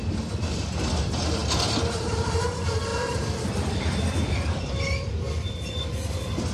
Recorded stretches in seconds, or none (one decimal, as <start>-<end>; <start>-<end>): 0.0-2.9; 5.1-6.5